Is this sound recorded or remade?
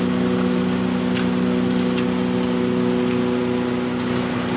recorded